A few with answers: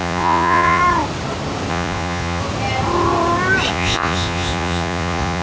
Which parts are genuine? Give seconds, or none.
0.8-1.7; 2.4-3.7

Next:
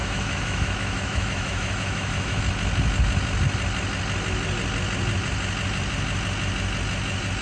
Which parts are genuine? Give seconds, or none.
2.4-7.4

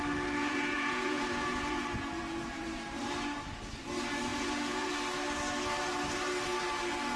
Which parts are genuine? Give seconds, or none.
0.0-0.4; 2.8-4.3; 4.9-7.2

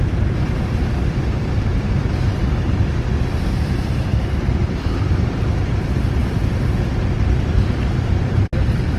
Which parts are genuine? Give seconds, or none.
6.2-7.0

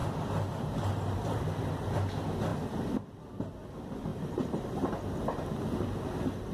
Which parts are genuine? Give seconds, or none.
1.7-2.5; 3.1-4.1; 4.9-6.5